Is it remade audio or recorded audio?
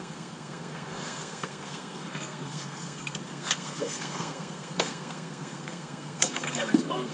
remade